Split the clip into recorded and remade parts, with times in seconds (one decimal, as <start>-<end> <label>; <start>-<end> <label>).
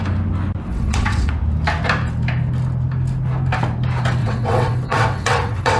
0.0-0.7 recorded; 0.7-1.3 remade; 1.3-4.2 recorded; 4.2-5.8 remade